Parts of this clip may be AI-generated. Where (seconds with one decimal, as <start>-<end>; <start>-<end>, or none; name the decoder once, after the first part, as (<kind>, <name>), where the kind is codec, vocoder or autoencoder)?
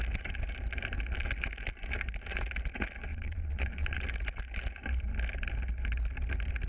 3.1-4.0 (vocoder, Vocos)